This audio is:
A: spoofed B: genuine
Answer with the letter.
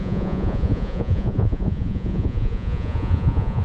A